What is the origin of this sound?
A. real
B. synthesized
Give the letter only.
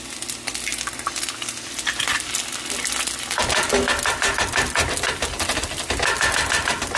A